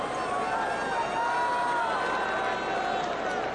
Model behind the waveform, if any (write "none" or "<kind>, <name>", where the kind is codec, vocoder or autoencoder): none